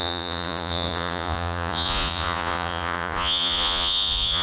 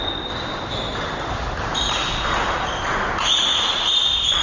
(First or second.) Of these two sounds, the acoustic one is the second